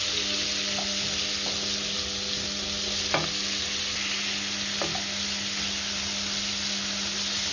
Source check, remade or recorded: recorded